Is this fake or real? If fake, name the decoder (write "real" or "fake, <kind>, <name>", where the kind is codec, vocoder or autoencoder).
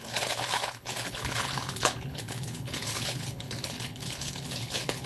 fake, codec, HILCodec